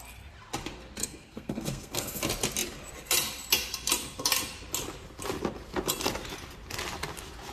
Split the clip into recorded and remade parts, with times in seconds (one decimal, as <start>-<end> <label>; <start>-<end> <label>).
0.0-1.0 recorded; 1.0-2.2 remade; 2.2-7.5 recorded